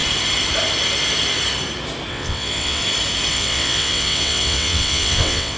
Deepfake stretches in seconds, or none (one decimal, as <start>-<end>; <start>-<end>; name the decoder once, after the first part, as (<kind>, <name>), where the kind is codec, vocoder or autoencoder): 2.1-2.8 (vocoder, WaveNeXt); 3.3-5.6